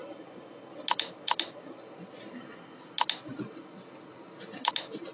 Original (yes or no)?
yes